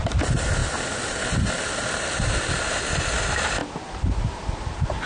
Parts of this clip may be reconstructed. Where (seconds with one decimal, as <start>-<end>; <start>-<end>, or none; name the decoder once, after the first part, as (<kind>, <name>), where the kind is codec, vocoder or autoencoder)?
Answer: none